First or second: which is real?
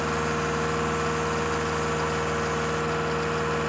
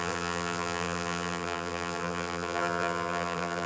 first